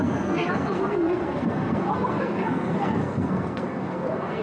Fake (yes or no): yes